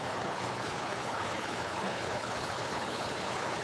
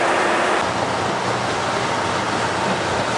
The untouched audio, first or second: second